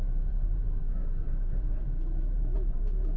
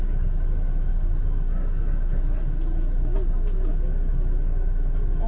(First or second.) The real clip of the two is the second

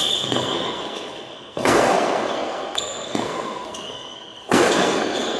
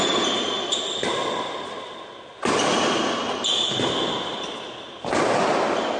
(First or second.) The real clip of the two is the second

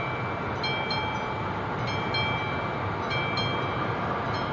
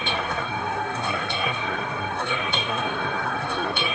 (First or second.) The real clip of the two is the first